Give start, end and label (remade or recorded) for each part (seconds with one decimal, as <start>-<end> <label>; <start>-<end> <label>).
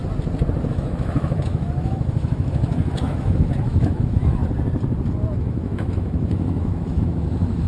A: 0.0-0.7 recorded; 0.7-4.4 remade; 4.4-5.4 recorded; 5.4-7.7 remade